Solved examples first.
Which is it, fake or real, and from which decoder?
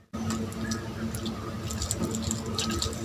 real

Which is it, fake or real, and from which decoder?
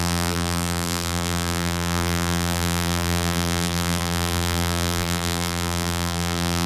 fake, vocoder, BigVGAN v2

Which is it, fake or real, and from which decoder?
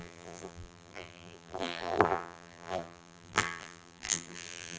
fake, vocoder, BigVGAN v2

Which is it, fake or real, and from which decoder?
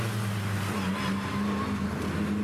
real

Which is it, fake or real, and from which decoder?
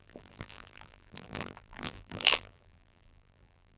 fake, vocoder, BigVGAN v2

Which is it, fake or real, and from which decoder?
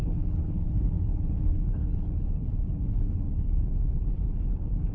fake, codec, HILCodec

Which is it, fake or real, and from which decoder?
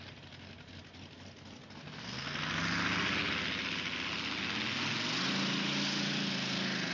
real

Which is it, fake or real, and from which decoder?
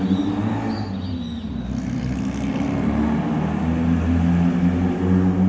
real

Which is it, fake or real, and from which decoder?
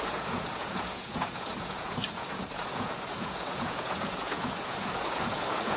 fake, vocoder, Vocos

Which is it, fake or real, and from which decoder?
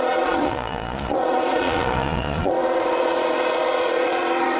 fake, vocoder, Vocos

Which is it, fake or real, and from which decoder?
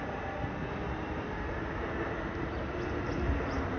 real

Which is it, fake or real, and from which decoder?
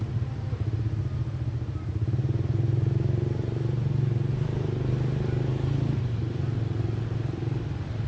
real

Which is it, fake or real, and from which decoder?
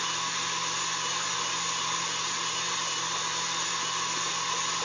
real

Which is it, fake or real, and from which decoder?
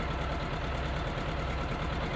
real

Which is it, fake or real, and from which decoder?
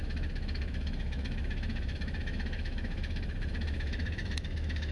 fake, autoencoder, DAC-VAE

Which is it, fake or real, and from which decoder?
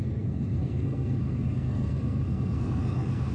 fake, codec, SNAC